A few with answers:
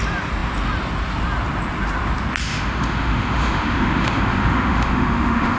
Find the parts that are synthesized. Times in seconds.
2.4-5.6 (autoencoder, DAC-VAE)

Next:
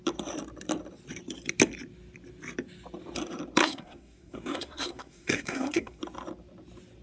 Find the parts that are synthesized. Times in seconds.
3.6-6.0 (codec, SNAC)